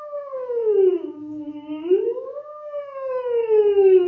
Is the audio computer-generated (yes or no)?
yes